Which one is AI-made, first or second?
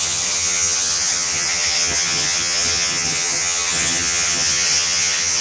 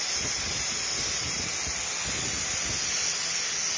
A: first